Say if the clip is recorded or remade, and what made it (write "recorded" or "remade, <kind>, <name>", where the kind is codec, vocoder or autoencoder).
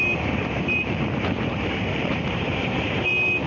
remade, vocoder, BigVGAN v2